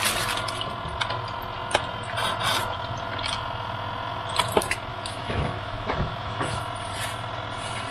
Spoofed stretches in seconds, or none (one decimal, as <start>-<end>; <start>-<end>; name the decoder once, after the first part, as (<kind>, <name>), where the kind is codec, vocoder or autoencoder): 4.9-6.6 (autoencoder, DAC-VAE)